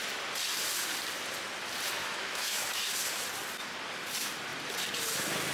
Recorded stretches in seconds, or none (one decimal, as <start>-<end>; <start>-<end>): 0.0-2.0; 2.7-5.5

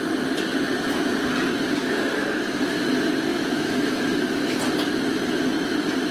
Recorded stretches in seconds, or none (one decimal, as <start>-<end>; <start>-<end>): 0.0-1.8; 2.4-3.3; 4.6-6.1

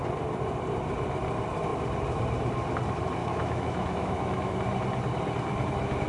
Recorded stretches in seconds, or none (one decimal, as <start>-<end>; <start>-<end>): 0.0-3.2; 4.6-6.1

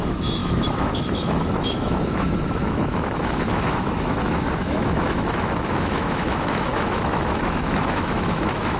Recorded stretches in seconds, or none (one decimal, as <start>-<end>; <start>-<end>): none

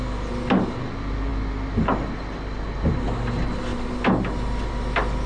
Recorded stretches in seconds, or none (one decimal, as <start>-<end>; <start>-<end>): 0.0-5.3